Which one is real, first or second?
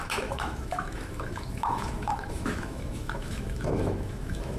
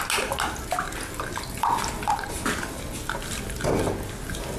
second